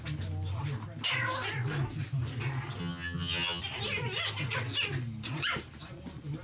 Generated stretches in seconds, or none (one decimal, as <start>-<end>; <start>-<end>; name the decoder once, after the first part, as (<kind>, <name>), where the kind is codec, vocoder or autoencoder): 2.8-3.6 (vocoder, HiFi-GAN)